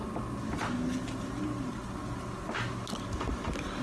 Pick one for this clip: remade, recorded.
recorded